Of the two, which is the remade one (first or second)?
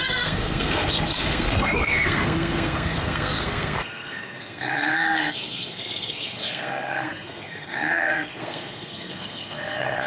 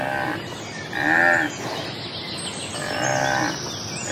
first